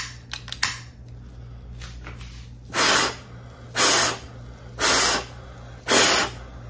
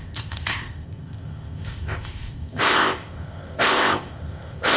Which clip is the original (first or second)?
first